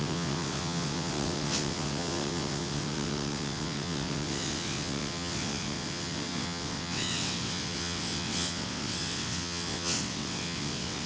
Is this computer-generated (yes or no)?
yes